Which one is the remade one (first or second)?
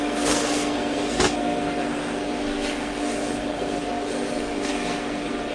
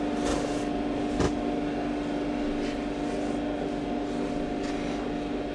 first